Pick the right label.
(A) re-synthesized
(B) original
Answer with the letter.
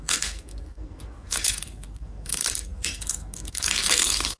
A